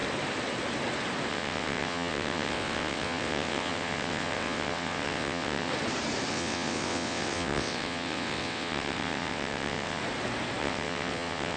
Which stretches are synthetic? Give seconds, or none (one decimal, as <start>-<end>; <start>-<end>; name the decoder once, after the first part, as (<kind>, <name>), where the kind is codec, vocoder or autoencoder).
1.3-5.7 (vocoder, WaveNeXt); 6.3-10.0; 10.6-11.6